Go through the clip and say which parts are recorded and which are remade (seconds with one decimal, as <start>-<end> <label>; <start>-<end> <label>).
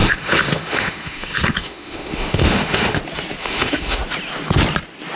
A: 0.0-3.0 remade; 3.0-3.4 recorded; 3.4-4.0 remade; 4.0-5.2 recorded